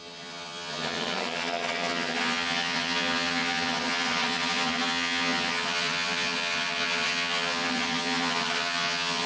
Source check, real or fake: fake